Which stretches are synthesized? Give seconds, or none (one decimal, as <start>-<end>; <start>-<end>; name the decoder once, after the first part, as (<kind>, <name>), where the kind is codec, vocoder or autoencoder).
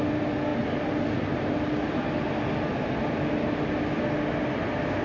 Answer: none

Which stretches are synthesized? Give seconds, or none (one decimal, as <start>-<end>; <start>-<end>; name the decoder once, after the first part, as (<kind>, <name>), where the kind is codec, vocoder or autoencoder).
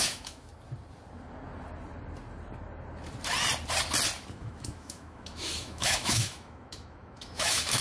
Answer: 0.0-0.5 (autoencoder, DAC-VAE); 4.3-7.8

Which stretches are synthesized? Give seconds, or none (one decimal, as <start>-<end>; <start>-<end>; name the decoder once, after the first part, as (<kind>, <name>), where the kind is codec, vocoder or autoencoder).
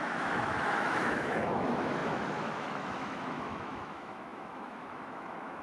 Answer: 0.0-5.6 (autoencoder, DAC-VAE)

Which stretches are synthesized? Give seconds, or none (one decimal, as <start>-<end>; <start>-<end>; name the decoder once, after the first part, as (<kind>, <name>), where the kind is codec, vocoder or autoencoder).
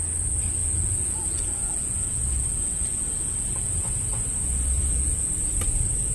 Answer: 0.6-3.7 (vocoder, Vocos); 4.8-5.3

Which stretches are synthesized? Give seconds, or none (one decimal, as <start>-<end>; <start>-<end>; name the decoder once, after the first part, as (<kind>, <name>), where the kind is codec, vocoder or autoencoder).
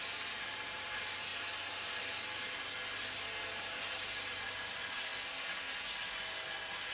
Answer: 0.0-1.3 (vocoder, BigVGAN v2); 3.4-5.1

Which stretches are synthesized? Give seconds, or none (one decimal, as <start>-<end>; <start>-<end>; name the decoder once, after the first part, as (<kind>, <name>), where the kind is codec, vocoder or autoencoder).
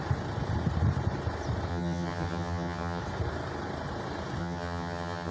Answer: 1.7-3.0 (vocoder, HiFi-GAN); 4.4-5.3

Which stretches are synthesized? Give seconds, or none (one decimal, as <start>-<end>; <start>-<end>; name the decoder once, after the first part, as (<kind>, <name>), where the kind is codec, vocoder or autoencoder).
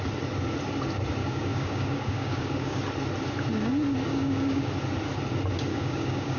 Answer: 1.2-2.8 (codec, DAC); 4.1-4.7; 5.7-6.4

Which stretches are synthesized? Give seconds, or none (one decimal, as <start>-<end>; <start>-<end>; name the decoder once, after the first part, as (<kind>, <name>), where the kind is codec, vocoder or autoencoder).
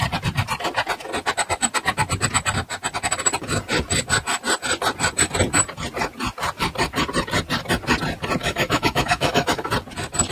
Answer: 8.4-9.7 (autoencoder, DAC-VAE)